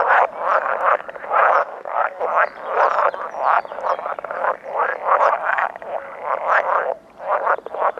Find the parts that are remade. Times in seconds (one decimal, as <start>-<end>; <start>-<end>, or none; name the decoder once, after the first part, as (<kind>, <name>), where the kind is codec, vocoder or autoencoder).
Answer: 1.6-2.2 (codec, SNAC)